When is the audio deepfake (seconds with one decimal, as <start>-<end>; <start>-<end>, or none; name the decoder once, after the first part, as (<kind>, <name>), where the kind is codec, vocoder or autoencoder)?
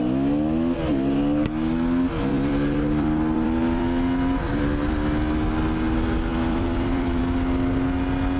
2.3-3.8 (vocoder, BigVGAN v2); 6.3-7.2